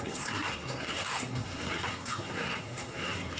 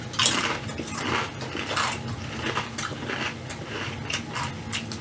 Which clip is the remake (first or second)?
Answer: first